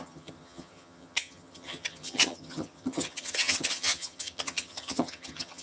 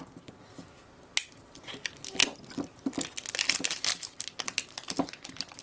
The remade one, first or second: first